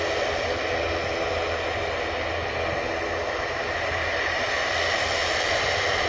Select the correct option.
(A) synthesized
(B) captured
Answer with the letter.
B